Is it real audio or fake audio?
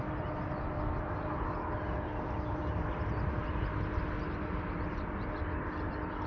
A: real